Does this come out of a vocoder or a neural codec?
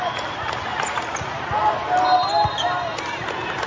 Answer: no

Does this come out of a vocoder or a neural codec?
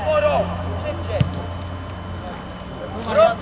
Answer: no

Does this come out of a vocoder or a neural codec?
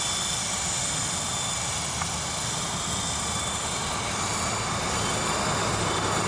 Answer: no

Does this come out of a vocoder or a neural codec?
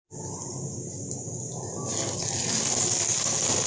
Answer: no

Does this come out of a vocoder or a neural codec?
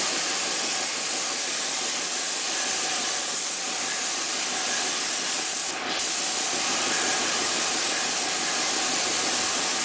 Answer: no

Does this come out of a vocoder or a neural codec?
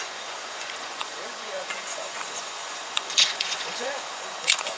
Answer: yes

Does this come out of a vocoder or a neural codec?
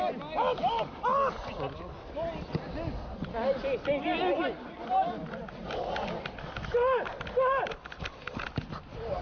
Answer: no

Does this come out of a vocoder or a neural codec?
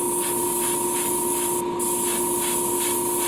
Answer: no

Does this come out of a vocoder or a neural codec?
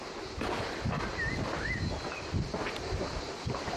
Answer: no